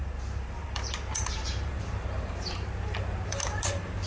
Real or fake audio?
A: fake